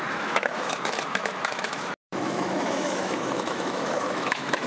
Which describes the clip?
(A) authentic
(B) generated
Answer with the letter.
B